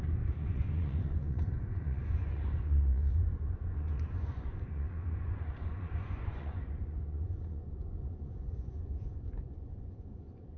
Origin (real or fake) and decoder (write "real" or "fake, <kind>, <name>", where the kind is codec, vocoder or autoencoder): fake, vocoder, Vocos